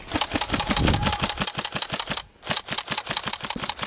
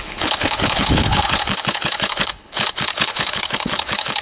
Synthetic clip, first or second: second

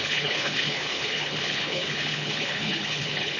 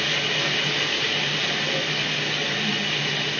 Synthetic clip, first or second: first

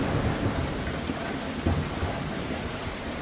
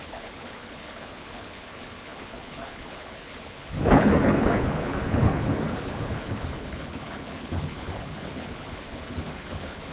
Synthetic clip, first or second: second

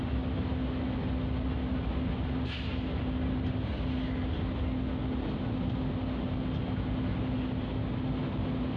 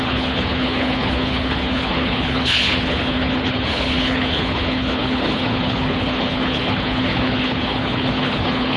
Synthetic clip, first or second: second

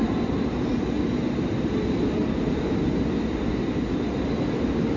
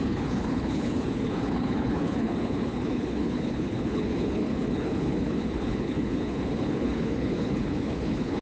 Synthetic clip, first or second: second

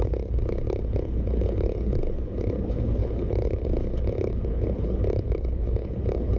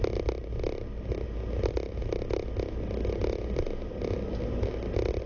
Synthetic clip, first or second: first